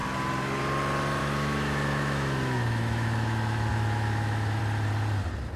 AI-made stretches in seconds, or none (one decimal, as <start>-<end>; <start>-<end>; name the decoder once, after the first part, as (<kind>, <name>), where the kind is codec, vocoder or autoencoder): 1.2-4.6 (autoencoder, DAC-VAE)